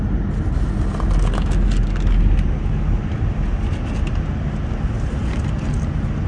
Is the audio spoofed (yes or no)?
no